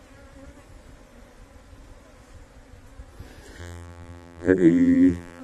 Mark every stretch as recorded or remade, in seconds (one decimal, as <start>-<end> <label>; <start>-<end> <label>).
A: 0.0-3.6 recorded; 3.6-5.4 remade